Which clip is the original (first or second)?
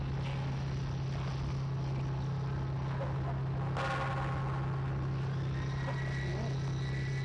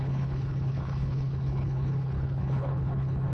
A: first